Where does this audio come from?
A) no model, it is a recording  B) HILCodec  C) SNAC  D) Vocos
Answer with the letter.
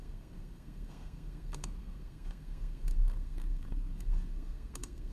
C